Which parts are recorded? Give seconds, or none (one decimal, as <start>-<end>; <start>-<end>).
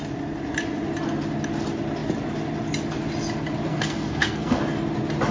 0.0-3.7; 4.6-5.3